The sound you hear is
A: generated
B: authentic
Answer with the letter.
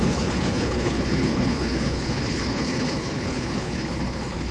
A